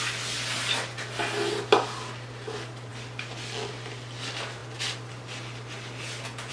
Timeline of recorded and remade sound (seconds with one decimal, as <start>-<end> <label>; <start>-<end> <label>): 0.0-6.5 recorded